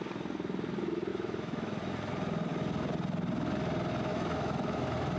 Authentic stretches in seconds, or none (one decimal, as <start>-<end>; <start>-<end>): 0.0-1.1; 1.9-4.1; 4.8-5.2